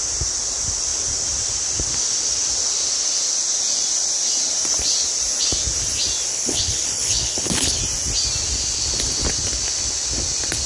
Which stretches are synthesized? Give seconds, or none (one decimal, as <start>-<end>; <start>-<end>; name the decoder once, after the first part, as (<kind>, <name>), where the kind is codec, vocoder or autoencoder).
6.3-7.8 (codec, HILCodec)